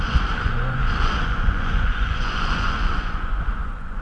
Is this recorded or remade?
remade